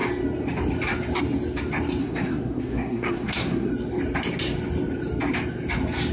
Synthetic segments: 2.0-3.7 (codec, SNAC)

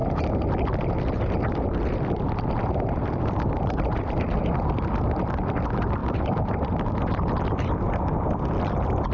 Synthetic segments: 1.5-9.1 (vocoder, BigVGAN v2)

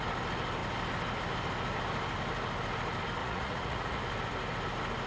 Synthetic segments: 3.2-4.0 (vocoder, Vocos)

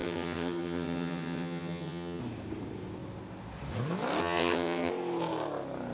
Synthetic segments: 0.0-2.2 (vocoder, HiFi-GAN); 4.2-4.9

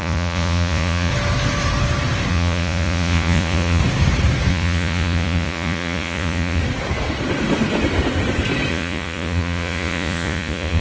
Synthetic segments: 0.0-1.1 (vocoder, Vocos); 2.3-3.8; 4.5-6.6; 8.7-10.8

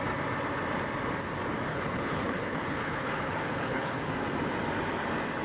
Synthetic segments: 1.7-4.0 (codec, HILCodec)

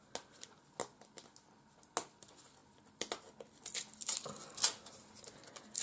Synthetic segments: none